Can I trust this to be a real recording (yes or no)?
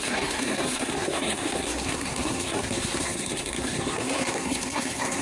no